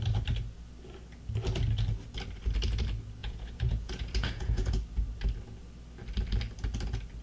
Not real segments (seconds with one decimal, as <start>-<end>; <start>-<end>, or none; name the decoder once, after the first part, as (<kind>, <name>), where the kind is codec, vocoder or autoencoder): 3.2-4.7 (vocoder, Vocos)